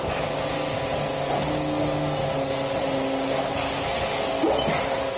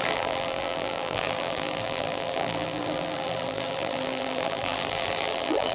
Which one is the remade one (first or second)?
second